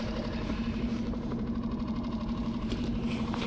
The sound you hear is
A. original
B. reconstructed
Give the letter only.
B